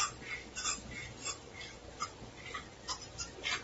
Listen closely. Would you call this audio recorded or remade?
recorded